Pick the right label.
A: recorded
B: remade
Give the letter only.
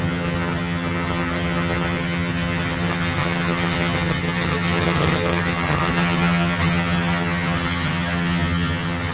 B